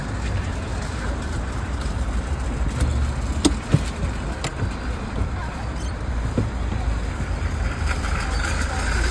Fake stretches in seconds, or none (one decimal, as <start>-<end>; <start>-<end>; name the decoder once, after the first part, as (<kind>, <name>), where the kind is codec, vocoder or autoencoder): 0.7-2.0 (vocoder, BigVGAN v2)